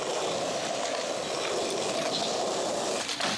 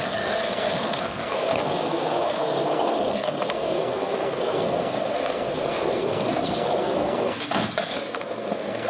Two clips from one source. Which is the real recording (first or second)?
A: first